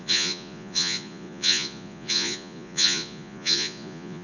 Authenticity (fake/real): fake